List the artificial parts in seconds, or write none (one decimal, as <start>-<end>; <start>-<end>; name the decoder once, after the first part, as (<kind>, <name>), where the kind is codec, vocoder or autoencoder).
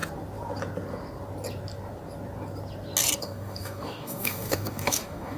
3.2-5.4 (codec, DAC)